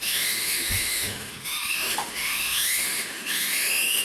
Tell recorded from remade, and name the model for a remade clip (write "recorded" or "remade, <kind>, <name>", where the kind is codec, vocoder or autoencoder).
remade, autoencoder, DAC-VAE